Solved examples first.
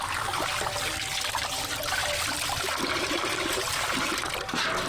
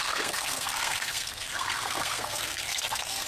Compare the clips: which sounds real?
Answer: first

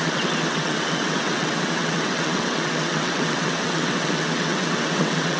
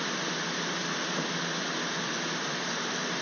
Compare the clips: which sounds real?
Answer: second